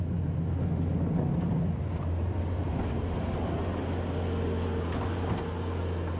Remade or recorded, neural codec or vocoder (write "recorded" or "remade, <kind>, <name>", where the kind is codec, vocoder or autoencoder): recorded